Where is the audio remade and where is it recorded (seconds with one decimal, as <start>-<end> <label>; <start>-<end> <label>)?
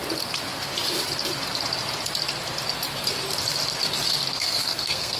0.0-4.3 recorded; 4.3-5.2 remade